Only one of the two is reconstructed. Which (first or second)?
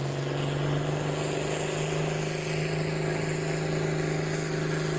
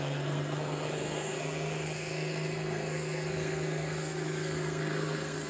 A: second